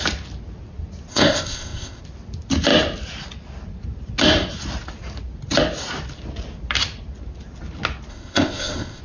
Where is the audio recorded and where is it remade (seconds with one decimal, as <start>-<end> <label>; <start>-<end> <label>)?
0.0-1.1 recorded; 1.1-2.0 remade; 2.0-8.1 recorded; 8.1-9.0 remade